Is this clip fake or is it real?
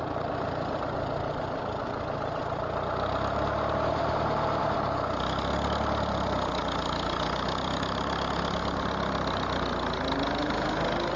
real